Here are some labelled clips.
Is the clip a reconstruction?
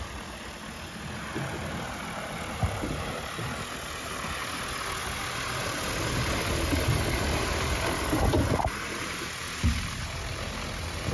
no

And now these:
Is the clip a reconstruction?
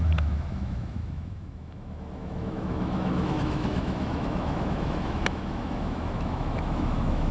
yes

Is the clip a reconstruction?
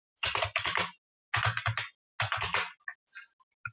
no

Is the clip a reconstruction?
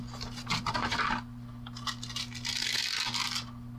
no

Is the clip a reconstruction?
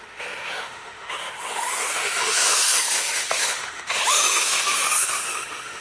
yes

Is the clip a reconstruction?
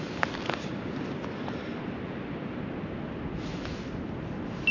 no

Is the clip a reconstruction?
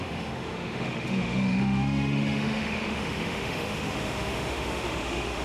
yes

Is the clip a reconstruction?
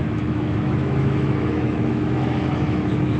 yes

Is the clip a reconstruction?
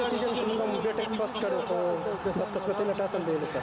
no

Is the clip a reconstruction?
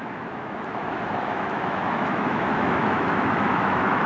yes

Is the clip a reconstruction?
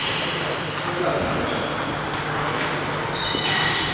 no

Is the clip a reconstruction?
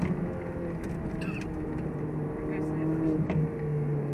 no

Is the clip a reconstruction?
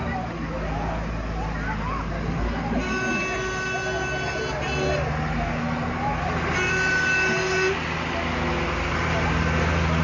no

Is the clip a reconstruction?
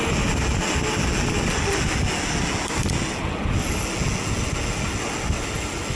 no